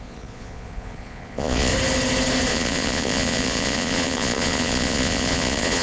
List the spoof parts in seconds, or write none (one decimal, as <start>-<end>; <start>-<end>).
0.0-1.7; 2.5-5.8